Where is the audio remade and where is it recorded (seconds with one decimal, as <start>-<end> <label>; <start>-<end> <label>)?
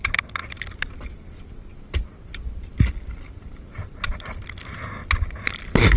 0.0-6.0 recorded